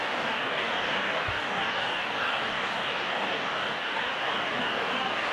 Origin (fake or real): fake